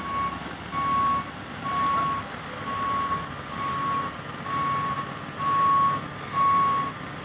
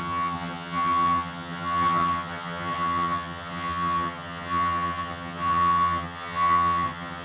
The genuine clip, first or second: first